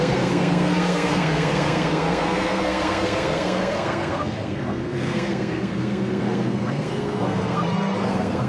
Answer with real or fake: fake